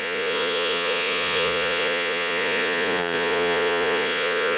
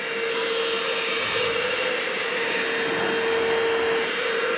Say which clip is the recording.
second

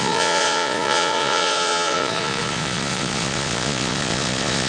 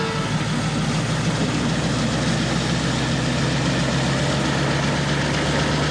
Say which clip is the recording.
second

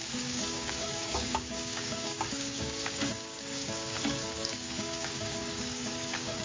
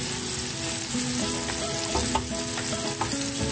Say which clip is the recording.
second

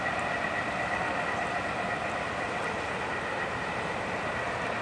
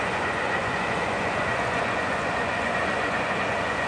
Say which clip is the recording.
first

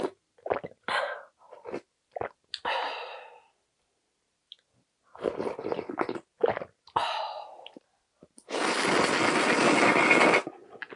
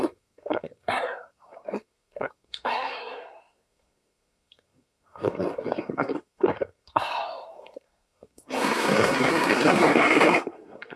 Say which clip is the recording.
first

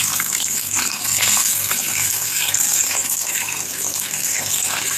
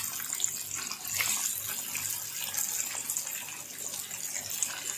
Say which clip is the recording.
second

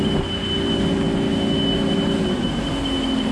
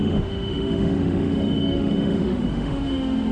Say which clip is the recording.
first